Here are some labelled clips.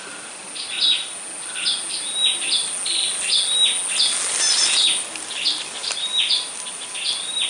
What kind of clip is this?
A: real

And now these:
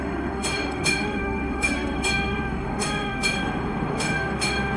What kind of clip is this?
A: fake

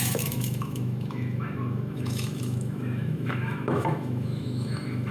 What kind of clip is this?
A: fake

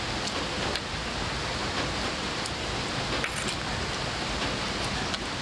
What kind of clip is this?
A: real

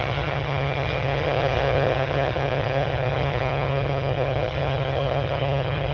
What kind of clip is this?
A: fake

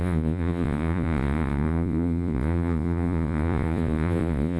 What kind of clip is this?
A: fake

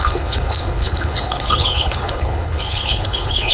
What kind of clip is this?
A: fake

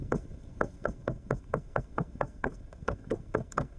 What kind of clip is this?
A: fake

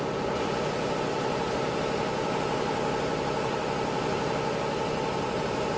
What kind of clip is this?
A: real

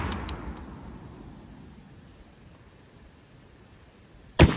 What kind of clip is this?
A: real